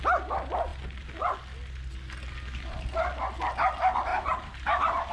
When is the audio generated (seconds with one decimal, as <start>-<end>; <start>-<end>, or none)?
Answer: 4.1-5.1

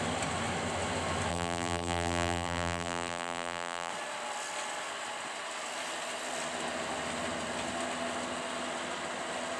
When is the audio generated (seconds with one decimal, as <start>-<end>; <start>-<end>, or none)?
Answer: 1.3-3.9

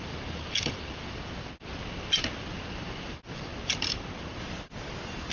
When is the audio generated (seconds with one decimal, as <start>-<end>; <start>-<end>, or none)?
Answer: 3.5-4.4

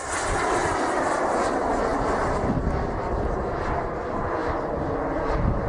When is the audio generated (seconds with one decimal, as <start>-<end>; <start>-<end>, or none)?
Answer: 0.6-1.1; 1.9-2.5

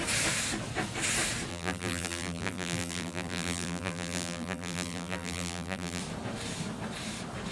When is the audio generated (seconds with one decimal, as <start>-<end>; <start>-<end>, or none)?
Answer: 1.5-6.0

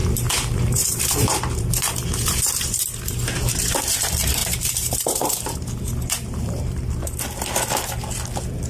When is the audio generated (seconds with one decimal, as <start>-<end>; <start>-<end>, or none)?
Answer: 0.0-3.9; 4.4-7.2

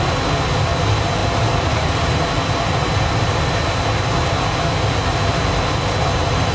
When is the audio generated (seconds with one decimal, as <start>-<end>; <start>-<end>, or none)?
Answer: 1.2-2.3

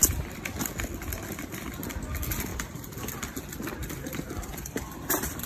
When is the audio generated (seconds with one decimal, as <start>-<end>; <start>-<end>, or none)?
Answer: 2.5-3.1; 3.8-5.5